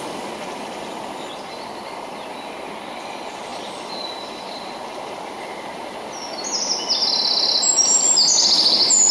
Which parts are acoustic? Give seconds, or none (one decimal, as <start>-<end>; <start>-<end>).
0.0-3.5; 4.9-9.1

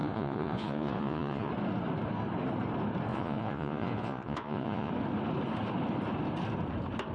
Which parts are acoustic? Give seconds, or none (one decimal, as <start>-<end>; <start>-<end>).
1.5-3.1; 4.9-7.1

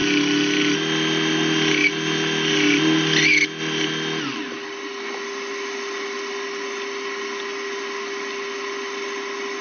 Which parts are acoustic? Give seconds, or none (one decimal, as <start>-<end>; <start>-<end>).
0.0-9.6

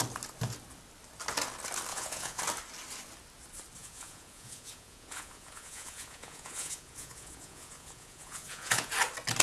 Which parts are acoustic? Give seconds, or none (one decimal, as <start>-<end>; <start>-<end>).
0.0-1.9; 2.4-3.8; 8.9-9.4

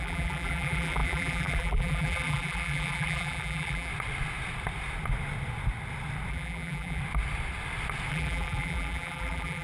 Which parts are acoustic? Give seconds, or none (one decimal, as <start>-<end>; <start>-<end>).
3.9-6.3; 7.0-8.1

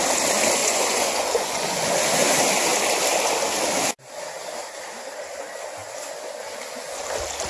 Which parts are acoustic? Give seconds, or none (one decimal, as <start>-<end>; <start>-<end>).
0.0-0.6; 1.9-7.5

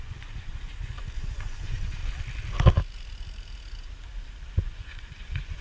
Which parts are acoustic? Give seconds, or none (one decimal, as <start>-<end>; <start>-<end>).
2.0-4.6